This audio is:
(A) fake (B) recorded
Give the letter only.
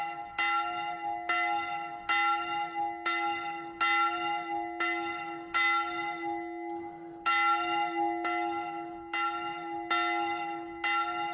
B